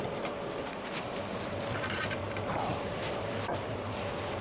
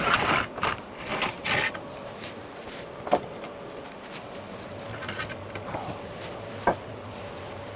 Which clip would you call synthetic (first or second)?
first